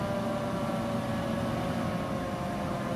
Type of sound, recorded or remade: recorded